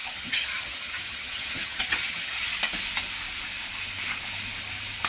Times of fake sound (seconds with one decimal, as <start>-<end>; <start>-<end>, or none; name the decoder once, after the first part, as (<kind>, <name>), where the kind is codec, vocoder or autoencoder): 0.0-2.5 (vocoder, HiFi-GAN)